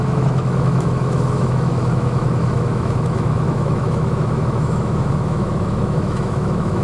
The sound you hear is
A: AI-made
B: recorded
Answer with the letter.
A